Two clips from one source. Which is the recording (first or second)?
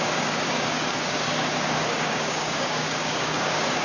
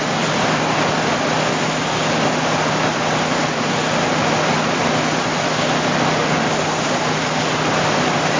second